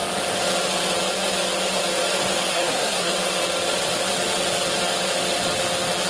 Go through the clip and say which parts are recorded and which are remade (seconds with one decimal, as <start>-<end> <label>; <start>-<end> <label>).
0.0-2.5 recorded; 2.5-3.1 remade; 3.1-6.1 recorded